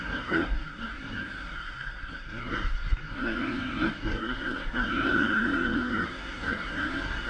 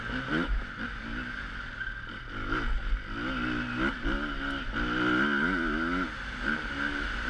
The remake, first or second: first